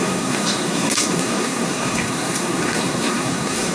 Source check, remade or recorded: remade